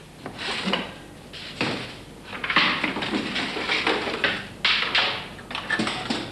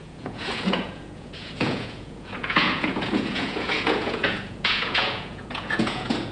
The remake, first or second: second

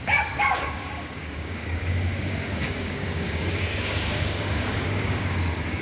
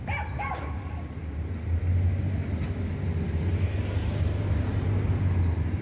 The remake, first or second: first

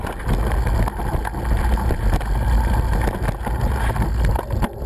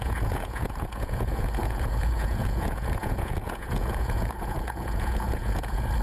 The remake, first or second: second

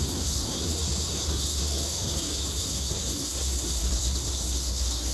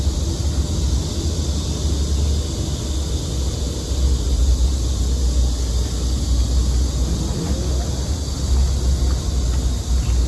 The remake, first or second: first